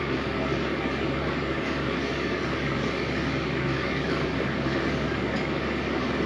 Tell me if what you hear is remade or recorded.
remade